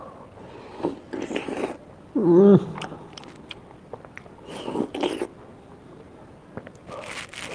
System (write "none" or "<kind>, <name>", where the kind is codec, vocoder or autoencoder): none